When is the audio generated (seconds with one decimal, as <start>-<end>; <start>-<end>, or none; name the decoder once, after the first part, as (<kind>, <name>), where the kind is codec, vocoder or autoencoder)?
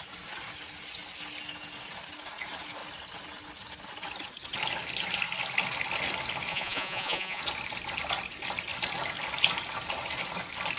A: 6.5-7.4 (vocoder, Vocos)